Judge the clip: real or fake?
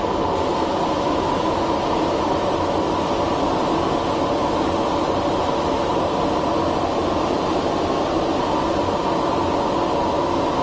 real